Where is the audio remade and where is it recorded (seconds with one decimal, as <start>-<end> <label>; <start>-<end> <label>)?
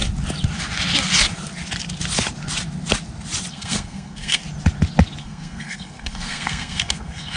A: 0.0-3.5 recorded; 3.5-4.4 remade; 4.4-5.2 recorded; 5.2-7.4 remade